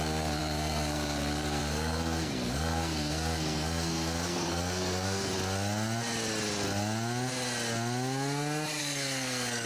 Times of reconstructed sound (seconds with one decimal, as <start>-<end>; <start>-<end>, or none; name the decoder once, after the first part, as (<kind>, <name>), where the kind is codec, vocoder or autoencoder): 0.0-5.3 (codec, SNAC); 8.8-9.7